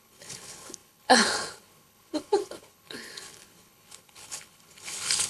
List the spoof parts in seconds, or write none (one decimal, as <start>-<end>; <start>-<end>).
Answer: 0.0-5.3